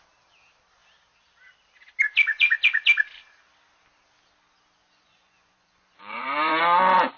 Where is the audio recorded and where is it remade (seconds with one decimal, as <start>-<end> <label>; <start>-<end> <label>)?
0.0-4.8 recorded; 4.8-6.6 remade; 6.6-7.2 recorded